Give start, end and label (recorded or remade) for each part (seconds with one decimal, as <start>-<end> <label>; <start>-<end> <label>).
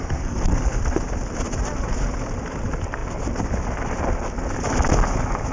0.0-0.8 remade; 0.8-5.5 recorded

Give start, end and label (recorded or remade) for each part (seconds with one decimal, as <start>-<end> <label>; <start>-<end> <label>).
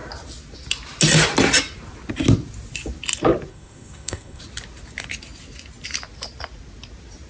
0.0-3.5 recorded; 3.5-4.4 remade; 4.4-7.3 recorded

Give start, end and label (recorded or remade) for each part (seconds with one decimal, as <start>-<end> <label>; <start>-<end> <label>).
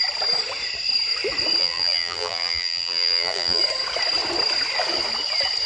0.0-1.6 recorded; 1.6-3.6 remade; 3.6-5.7 recorded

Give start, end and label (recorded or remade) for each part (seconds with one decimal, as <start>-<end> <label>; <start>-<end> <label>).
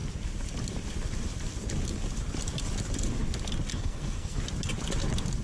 0.0-3.7 recorded; 3.7-4.4 remade; 4.4-5.4 recorded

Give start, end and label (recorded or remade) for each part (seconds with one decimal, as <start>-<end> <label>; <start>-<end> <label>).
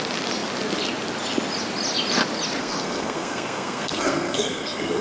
0.0-2.6 recorded; 2.6-5.0 remade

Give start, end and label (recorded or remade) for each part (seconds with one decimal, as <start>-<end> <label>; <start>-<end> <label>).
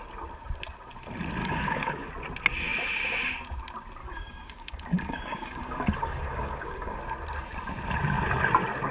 0.0-1.4 recorded; 1.4-2.1 remade; 2.1-4.0 recorded; 4.0-7.0 remade; 7.0-8.9 recorded